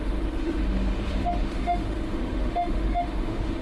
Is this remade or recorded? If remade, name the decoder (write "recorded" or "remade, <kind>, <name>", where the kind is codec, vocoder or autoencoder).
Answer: remade, autoencoder, DAC-VAE